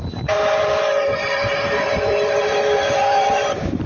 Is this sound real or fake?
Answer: fake